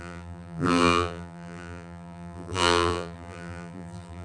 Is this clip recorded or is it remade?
remade